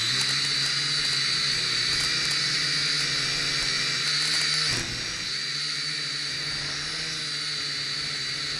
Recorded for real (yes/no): yes